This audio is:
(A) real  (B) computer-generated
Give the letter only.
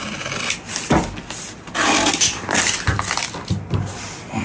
A